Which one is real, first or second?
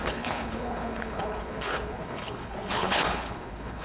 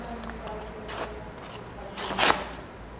second